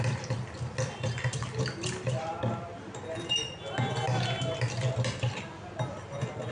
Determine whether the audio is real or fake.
real